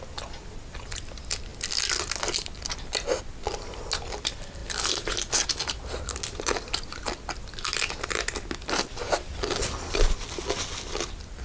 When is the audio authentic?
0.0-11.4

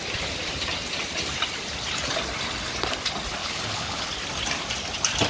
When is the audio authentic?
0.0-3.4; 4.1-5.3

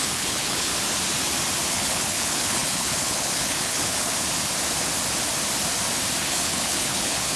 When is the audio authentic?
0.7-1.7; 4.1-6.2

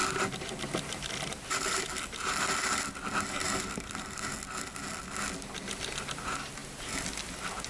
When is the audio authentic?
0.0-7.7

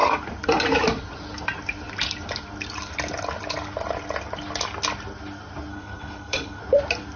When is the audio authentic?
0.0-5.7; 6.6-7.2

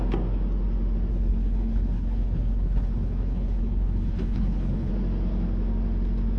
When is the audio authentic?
0.0-1.1; 4.9-6.4

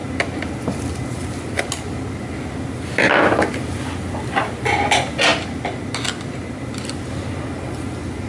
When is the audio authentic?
0.0-8.3

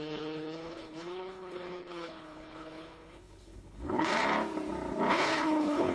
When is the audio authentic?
4.1-5.1